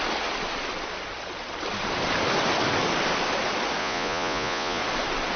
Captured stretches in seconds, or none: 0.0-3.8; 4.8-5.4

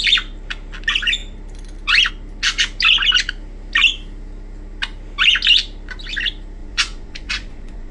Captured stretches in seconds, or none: 0.0-6.6

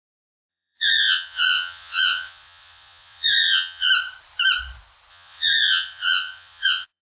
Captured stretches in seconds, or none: 0.0-0.5; 3.9-5.1

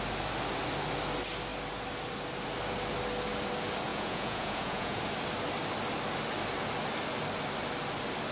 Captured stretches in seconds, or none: 0.0-3.9; 5.0-8.3

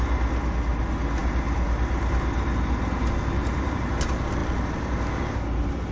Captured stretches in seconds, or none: 0.0-5.9

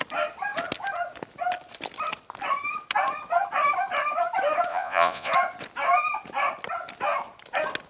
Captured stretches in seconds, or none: 0.0-4.7; 5.3-7.9

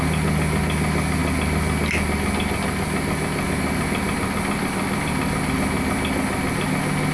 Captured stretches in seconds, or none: 0.0-7.1

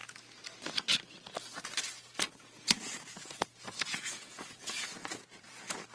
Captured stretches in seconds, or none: 0.0-2.3